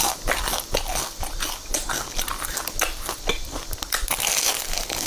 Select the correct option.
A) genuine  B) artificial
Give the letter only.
A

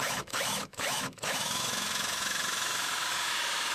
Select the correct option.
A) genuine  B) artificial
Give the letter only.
B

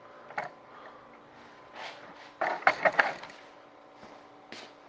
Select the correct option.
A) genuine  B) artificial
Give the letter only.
A